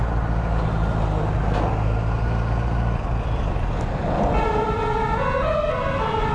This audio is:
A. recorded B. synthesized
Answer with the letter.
A